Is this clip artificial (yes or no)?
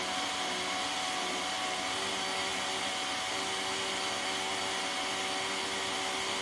no